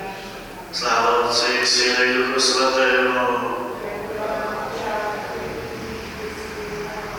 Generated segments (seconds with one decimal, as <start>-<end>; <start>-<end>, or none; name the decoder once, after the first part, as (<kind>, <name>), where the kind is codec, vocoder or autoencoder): none